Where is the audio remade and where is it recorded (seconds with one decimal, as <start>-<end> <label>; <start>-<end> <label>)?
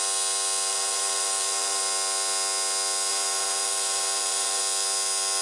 0.0-0.7 recorded; 0.7-1.8 remade; 1.8-3.1 recorded; 3.1-4.6 remade; 4.6-5.4 recorded